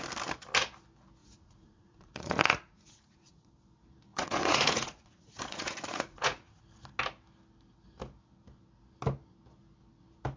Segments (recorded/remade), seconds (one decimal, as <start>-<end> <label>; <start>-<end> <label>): 0.0-1.2 recorded; 1.2-3.5 remade; 3.5-4.1 recorded; 4.1-6.6 remade; 6.6-10.4 recorded